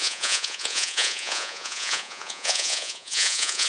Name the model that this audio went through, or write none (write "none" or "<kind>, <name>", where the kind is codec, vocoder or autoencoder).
vocoder, Vocos